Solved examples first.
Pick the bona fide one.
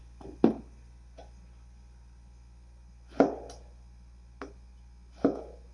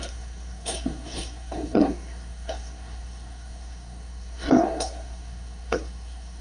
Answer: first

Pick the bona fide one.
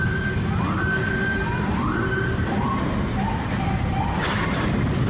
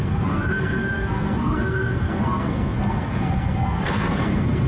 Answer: first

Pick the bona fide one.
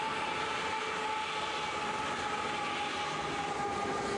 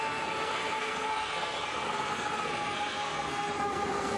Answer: first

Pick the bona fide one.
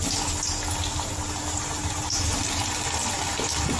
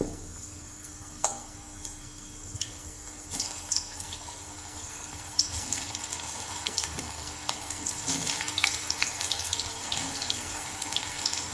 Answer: first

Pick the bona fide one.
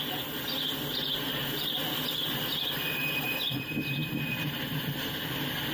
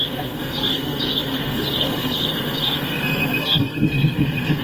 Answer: first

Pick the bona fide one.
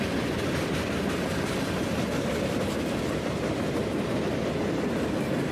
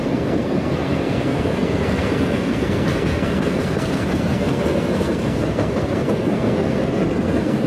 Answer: first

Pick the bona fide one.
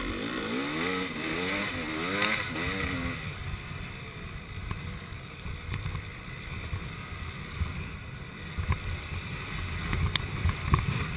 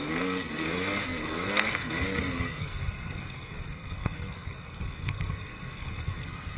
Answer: first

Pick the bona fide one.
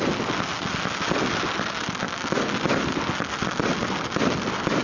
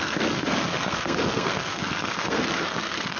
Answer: first